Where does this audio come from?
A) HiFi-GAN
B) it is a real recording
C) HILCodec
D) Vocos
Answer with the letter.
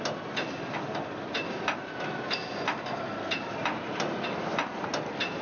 B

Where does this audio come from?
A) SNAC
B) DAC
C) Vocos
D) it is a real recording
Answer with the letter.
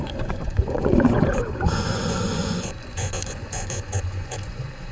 C